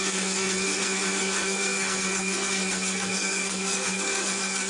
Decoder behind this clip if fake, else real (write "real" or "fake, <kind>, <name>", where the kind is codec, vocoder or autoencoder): fake, codec, SNAC